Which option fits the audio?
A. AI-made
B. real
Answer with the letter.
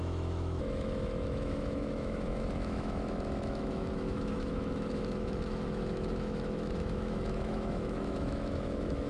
A